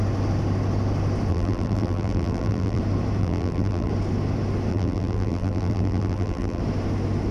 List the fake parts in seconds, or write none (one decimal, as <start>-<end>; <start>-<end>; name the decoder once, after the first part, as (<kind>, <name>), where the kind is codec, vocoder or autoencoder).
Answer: 1.3-2.8 (vocoder, BigVGAN v2); 3.2-3.9; 4.7-6.6